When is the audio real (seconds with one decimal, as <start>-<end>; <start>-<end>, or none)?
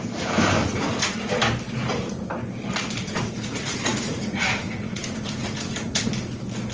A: 0.0-0.6; 1.3-3.0; 6.1-6.7